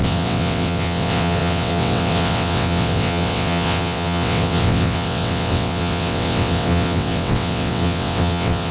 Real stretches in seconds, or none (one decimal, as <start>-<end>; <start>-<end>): none